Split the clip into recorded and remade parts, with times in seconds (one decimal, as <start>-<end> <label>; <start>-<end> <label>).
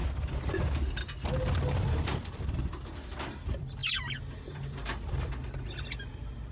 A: 0.0-1.7 recorded; 1.7-3.8 remade; 3.8-4.4 recorded; 4.4-5.4 remade; 5.4-6.5 recorded